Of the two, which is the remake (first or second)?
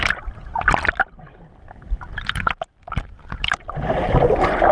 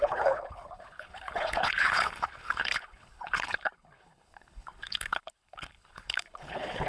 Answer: second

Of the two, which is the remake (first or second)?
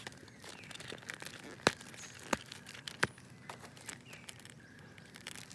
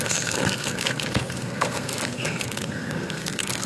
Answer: second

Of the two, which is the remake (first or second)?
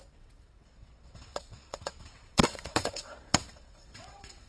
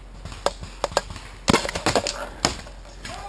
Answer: first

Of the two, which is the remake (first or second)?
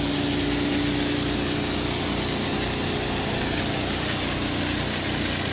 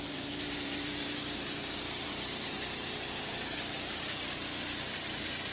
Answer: second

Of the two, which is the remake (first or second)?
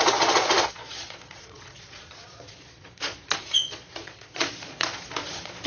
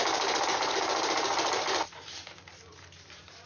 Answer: first